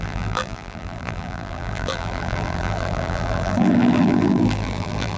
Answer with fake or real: fake